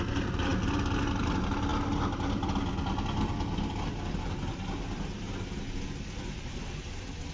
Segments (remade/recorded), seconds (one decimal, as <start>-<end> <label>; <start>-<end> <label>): 0.0-7.3 recorded